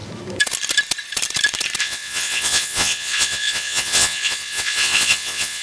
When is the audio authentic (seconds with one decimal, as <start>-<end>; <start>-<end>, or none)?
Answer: 0.0-1.8